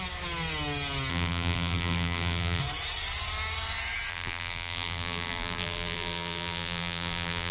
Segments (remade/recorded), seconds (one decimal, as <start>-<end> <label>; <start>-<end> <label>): 0.0-1.1 recorded; 1.1-2.6 remade; 2.6-4.1 recorded; 4.1-7.5 remade